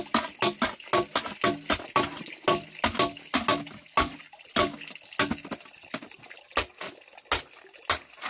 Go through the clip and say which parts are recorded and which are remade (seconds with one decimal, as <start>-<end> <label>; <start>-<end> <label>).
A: 0.0-8.3 recorded